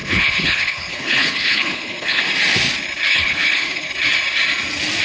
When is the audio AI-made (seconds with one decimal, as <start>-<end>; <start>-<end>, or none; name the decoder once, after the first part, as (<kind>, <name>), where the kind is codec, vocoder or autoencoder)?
0.0-2.2 (codec, HILCodec); 3.1-3.9